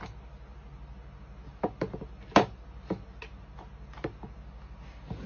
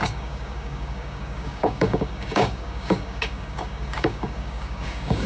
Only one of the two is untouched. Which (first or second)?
first